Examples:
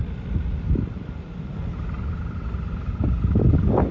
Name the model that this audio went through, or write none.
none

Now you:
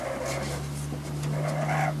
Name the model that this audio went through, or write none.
none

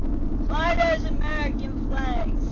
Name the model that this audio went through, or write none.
none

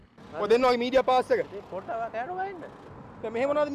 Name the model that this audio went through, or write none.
none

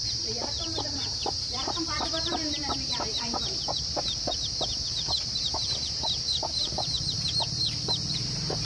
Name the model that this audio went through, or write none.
vocoder, BigVGAN v2